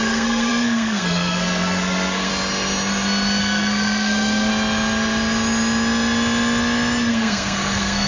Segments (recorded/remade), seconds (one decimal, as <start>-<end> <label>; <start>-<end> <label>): 0.0-2.3 remade; 2.3-3.4 recorded; 3.4-4.5 remade; 4.5-7.1 recorded; 7.1-8.1 remade